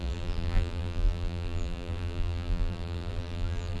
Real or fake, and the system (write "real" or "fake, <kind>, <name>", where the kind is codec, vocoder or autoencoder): fake, vocoder, BigVGAN v2